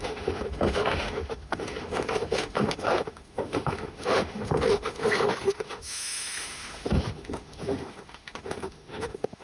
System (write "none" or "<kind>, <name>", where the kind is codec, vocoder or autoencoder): autoencoder, DAC-VAE